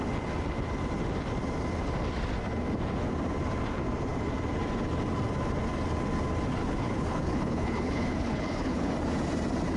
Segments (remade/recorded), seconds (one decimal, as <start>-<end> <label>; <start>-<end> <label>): 0.0-6.6 recorded; 6.6-8.9 remade; 8.9-9.8 recorded